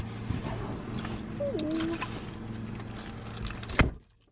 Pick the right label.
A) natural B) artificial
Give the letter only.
A